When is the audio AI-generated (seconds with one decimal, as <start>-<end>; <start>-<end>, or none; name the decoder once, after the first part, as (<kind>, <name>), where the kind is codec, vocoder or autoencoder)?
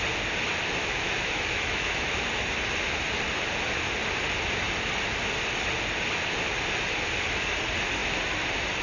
0.8-2.3 (autoencoder, DAC-VAE)